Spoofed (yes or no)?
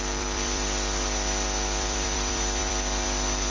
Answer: yes